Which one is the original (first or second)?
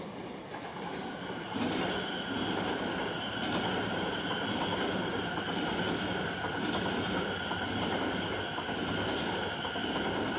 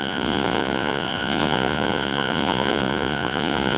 first